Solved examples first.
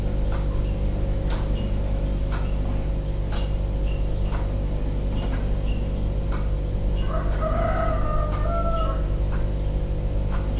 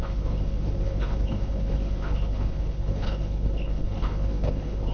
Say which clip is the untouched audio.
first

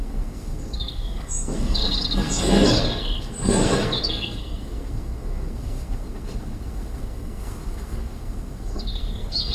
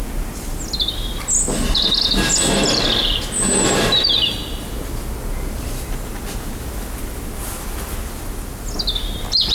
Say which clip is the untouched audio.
second